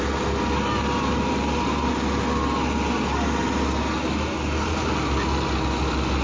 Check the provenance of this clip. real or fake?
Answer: real